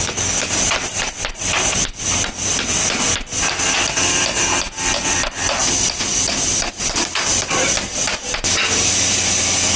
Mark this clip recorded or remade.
recorded